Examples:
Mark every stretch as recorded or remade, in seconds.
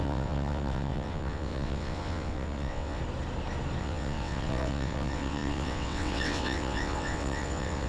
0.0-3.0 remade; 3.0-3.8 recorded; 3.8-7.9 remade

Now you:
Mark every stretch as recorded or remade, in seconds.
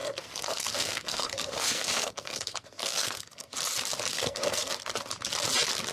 0.0-3.5 remade; 3.5-4.1 recorded; 4.1-4.7 remade; 4.7-5.9 recorded